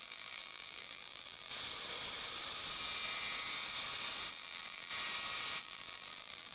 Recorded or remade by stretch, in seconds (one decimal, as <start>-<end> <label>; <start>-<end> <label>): 0.0-1.5 remade; 1.5-4.3 recorded; 4.3-4.9 remade; 4.9-5.6 recorded; 5.6-6.5 remade